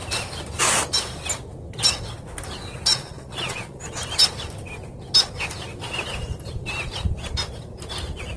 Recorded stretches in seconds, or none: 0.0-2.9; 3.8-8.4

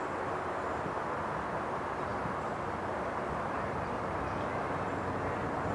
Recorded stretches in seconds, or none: 0.0-5.7

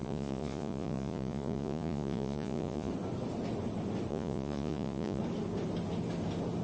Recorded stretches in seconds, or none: 2.9-4.1; 5.2-6.6